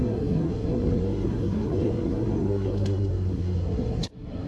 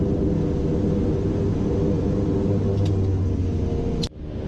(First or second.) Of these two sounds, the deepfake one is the first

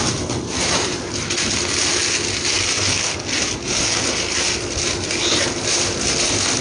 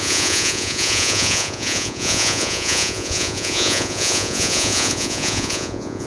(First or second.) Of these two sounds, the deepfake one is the second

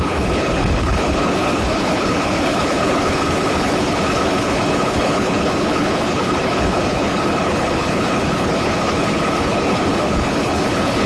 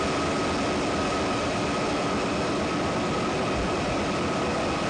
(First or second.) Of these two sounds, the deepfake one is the first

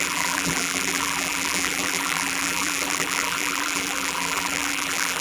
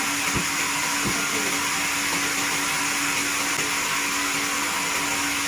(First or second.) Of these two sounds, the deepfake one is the first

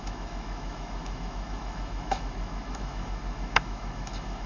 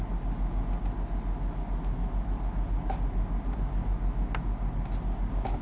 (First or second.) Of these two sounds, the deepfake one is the first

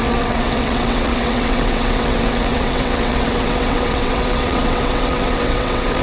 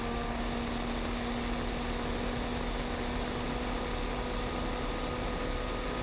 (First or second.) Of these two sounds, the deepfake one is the first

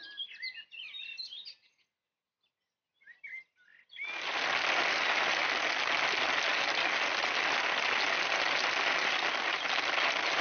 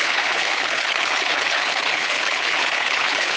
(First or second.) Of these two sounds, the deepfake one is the second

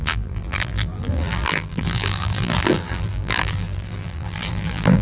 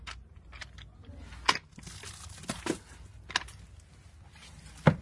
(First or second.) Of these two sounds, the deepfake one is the first